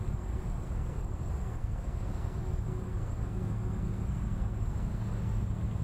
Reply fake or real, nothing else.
fake